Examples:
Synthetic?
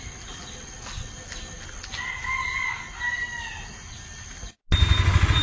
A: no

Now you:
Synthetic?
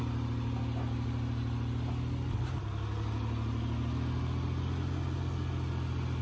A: no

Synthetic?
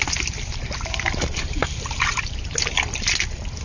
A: no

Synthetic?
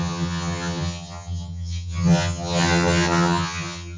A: yes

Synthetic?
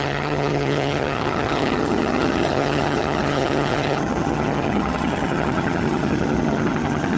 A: yes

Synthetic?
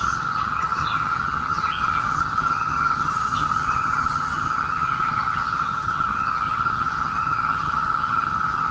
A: yes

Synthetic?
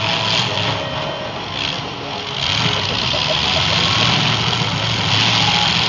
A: no